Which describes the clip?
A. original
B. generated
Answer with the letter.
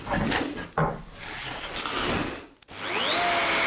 A